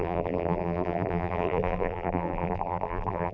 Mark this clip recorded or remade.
remade